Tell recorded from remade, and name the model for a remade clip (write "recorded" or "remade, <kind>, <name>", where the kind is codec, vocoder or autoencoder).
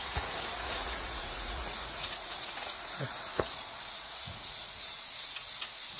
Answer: remade, vocoder, Vocos